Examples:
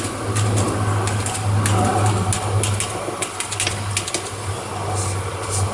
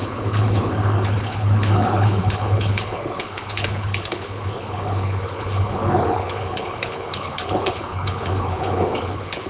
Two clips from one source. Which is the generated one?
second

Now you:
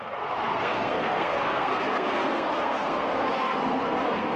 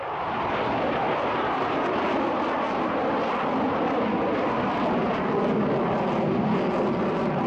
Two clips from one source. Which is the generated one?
first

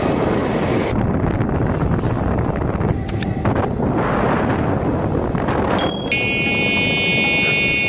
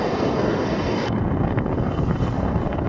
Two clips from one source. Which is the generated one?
second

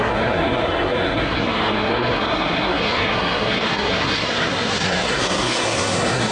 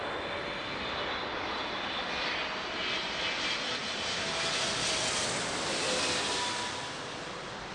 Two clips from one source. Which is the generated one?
first